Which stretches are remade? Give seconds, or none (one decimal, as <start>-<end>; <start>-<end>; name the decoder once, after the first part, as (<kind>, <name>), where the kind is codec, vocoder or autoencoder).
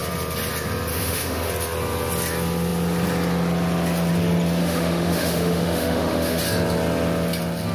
0.9-1.5 (autoencoder, DAC-VAE); 4.6-6.4